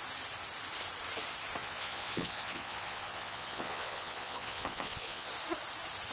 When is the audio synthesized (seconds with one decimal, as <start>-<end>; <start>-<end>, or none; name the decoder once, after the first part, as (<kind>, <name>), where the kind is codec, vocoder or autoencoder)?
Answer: 1.6-5.3 (vocoder, Vocos)